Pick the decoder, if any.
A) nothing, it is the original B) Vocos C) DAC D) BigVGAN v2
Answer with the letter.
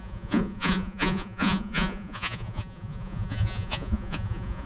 B